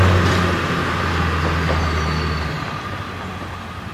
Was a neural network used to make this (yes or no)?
no